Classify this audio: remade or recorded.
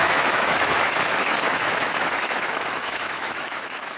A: remade